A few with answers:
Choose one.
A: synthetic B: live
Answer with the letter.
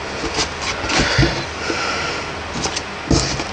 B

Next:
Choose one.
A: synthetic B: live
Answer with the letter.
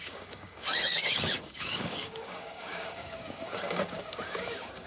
A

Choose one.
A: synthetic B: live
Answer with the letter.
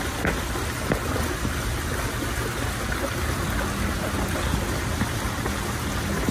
B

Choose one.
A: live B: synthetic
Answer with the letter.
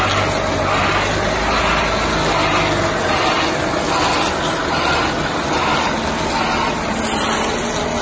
A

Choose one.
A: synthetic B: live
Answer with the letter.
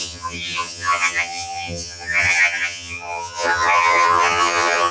A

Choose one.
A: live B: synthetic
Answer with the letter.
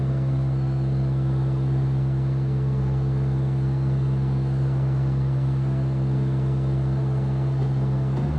B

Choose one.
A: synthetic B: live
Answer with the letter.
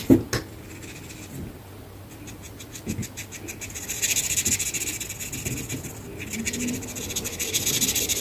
B